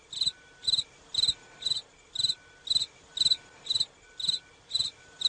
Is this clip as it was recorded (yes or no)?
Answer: yes